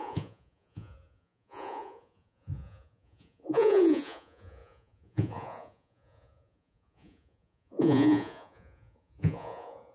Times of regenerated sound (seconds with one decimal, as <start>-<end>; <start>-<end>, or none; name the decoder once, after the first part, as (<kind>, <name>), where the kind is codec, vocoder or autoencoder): 0.0-9.9 (vocoder, Vocos)